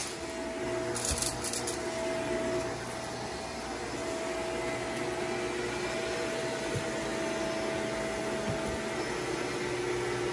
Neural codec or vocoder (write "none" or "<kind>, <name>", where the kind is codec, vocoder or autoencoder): none